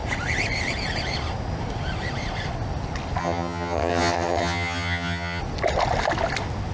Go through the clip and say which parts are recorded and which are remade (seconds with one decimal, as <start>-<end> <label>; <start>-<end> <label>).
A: 0.0-3.2 recorded; 3.2-5.4 remade; 5.4-6.7 recorded

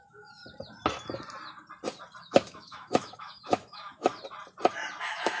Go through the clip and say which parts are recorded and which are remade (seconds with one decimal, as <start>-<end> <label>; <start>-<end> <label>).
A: 0.0-0.4 remade; 0.4-2.2 recorded; 2.2-4.1 remade; 4.1-5.0 recorded; 5.0-5.4 remade